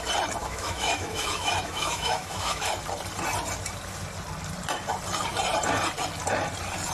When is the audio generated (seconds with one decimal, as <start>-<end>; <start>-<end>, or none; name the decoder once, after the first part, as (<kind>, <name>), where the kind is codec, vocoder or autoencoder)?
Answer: 0.4-2.7 (autoencoder, DAC-VAE)